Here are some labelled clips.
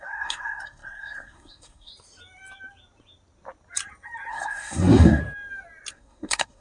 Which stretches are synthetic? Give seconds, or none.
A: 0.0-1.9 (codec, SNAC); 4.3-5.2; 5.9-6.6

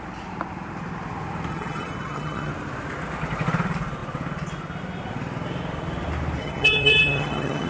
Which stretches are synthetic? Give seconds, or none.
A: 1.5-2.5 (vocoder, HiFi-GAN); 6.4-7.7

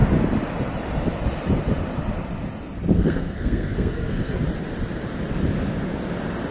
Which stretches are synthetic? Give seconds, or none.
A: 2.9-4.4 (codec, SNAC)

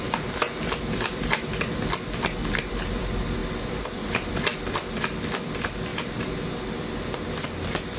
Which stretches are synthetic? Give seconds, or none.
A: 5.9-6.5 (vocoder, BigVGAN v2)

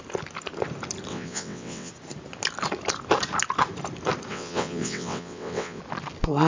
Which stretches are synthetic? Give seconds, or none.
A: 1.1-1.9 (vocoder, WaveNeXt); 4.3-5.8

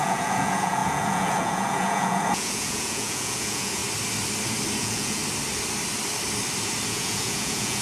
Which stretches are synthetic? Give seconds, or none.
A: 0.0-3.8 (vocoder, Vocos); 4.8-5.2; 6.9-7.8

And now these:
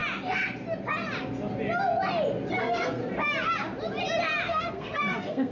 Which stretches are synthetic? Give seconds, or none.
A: 2.6-3.0 (codec, SNAC); 4.5-5.5

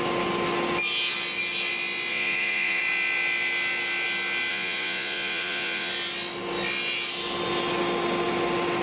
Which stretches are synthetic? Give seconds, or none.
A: 2.1-2.8 (vocoder, Vocos); 4.5-5.9